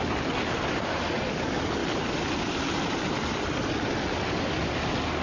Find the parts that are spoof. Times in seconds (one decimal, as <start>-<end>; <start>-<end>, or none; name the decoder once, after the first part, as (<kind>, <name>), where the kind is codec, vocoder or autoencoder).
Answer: none